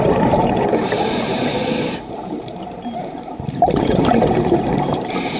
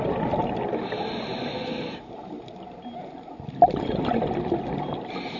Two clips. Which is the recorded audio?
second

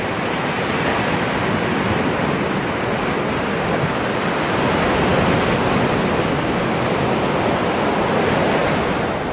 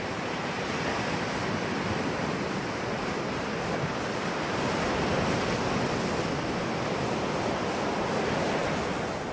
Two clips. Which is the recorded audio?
first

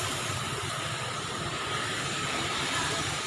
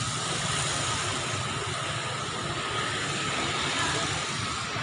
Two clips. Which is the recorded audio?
second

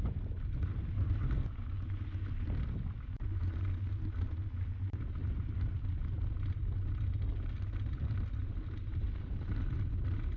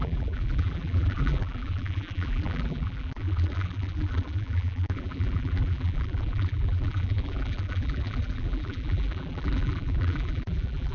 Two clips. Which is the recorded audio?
first